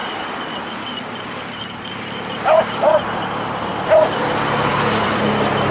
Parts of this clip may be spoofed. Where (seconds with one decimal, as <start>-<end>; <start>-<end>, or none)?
0.0-1.9; 4.7-5.2

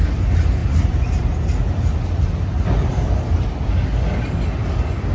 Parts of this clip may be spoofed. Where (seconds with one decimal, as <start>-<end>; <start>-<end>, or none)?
0.6-3.7

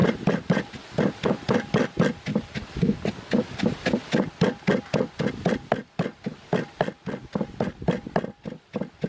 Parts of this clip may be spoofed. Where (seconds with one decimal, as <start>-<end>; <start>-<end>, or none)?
0.0-0.8

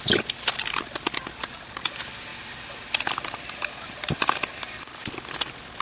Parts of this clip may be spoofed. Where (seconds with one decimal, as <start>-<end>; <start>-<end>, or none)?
0.0-5.8